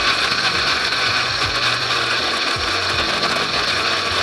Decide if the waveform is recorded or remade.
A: remade